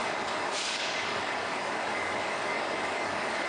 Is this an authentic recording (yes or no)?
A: no